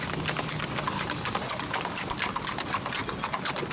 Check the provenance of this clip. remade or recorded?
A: recorded